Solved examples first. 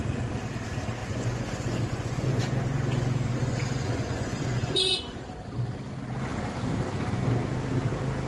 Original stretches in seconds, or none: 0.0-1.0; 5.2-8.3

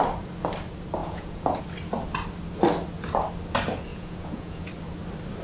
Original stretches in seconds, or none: 0.0-1.0; 1.6-3.9; 4.7-5.4

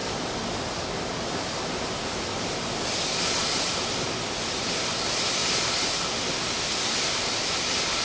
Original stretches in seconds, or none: 0.0-8.0

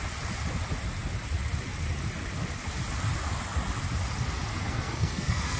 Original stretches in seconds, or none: 0.0-4.5

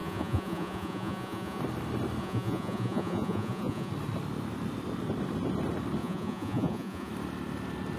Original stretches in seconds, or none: 1.6-2.2; 3.9-6.0; 7.1-8.0

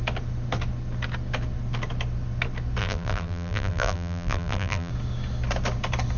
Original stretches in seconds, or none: 0.0-2.8; 4.9-6.2

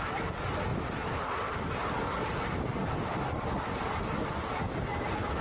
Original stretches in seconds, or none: 0.0-0.7; 3.9-5.4